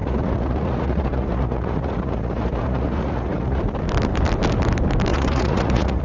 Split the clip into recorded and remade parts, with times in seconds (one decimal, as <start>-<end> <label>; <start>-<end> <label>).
0.0-3.6 remade; 3.6-5.1 recorded; 5.1-6.0 remade